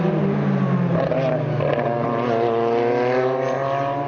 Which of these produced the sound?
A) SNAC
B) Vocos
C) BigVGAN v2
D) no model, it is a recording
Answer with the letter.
D